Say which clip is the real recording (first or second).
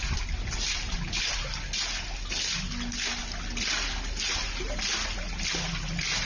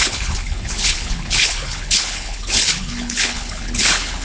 first